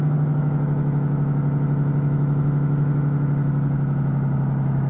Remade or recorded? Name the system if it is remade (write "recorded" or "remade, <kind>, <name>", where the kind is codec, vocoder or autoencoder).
remade, autoencoder, DAC-VAE